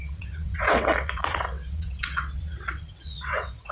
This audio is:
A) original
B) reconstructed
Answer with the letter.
B